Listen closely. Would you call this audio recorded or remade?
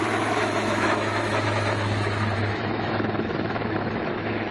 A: remade